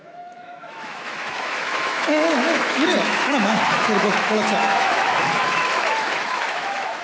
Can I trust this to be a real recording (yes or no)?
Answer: no